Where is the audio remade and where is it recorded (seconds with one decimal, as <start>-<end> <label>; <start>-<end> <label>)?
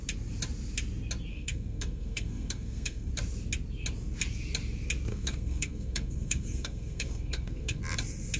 0.0-1.3 recorded; 1.3-3.1 remade; 3.1-5.1 recorded; 5.1-7.8 remade; 7.8-8.4 recorded